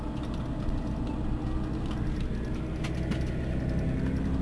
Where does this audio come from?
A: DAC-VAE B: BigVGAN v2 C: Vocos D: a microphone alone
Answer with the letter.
D